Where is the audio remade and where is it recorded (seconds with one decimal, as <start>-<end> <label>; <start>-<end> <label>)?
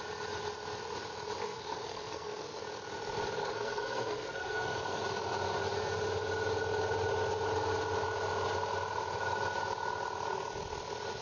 0.0-1.4 recorded; 1.4-2.6 remade; 2.6-3.4 recorded; 3.4-5.0 remade; 5.0-11.2 recorded